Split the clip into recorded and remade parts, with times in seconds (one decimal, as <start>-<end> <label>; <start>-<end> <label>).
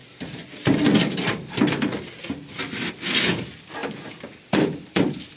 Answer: 0.0-0.8 remade; 0.8-5.4 recorded